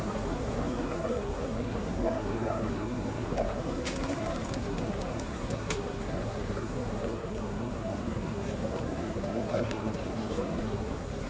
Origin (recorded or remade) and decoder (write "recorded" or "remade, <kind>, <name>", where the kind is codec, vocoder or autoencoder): remade, codec, SNAC